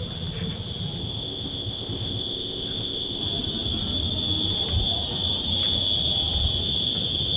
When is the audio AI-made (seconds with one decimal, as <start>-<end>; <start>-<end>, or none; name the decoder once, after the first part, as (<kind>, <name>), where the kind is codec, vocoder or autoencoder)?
1.0-3.2 (codec, ZipCodec)